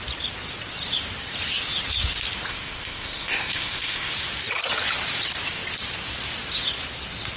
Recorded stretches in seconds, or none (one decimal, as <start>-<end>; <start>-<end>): 0.0-2.5; 4.1-7.4